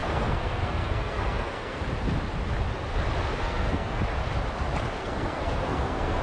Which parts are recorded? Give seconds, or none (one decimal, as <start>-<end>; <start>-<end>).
1.8-3.4; 4.0-5.0